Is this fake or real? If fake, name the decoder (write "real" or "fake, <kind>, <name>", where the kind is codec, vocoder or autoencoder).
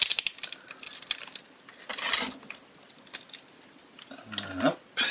real